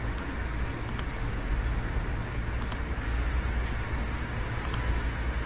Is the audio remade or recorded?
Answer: recorded